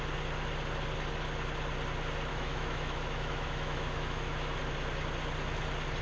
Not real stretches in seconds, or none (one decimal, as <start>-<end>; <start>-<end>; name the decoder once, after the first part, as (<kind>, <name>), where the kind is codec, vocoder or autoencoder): 2.3-4.6 (autoencoder, DAC-VAE)